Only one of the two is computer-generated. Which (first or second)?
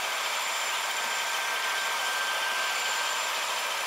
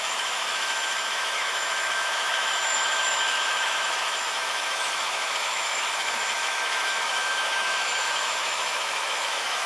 second